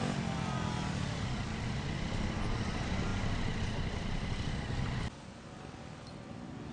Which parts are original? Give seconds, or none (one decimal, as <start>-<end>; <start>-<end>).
0.0-6.7

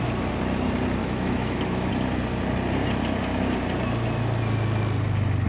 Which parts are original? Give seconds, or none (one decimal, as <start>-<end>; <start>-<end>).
0.0-1.0; 1.9-5.5

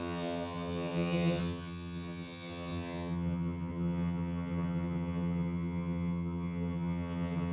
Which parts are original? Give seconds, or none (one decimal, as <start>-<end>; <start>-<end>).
none

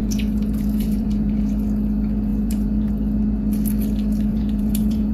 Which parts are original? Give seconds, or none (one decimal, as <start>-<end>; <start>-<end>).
1.5-2.3; 2.9-4.3

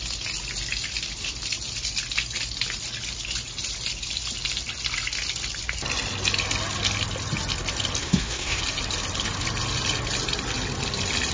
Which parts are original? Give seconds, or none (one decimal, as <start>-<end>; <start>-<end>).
0.0-8.0; 8.6-11.3

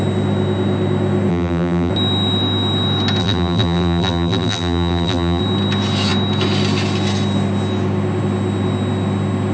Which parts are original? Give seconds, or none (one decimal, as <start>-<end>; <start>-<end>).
0.0-1.3; 1.9-3.2; 5.4-9.5

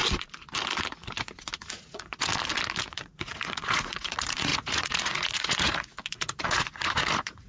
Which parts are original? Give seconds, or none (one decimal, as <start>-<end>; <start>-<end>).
0.0-1.8; 2.3-2.8